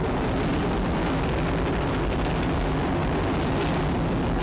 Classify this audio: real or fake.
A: real